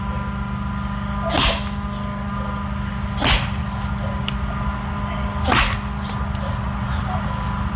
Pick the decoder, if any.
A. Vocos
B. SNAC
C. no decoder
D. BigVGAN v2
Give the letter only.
C